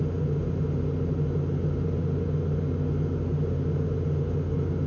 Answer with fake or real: real